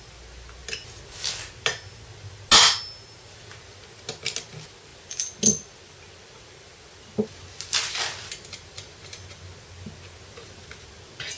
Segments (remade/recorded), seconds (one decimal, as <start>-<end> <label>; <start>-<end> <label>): 0.0-11.4 recorded